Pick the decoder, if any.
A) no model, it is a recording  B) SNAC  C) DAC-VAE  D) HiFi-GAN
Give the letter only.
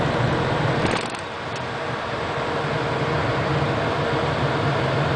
A